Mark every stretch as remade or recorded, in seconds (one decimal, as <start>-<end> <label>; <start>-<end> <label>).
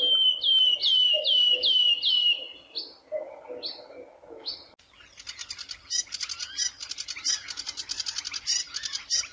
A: 0.0-9.3 recorded